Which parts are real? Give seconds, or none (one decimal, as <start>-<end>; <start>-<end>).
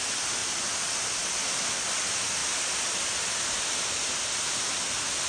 0.0-5.3